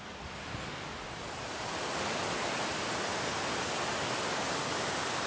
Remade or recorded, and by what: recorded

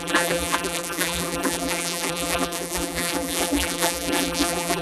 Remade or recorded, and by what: remade, vocoder, BigVGAN v2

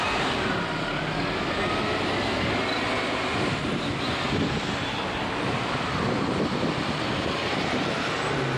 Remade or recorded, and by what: recorded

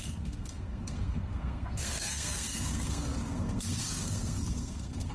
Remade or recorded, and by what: remade, codec, SNAC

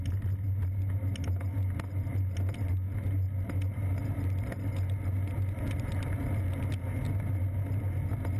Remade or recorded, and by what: recorded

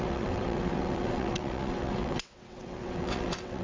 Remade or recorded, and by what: remade, vocoder, WaveNeXt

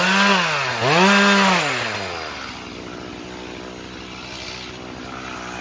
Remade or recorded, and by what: recorded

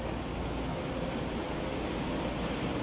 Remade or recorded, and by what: recorded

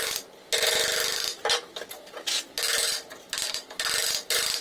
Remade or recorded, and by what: recorded